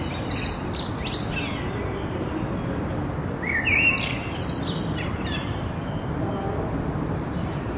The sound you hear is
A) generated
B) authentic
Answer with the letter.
B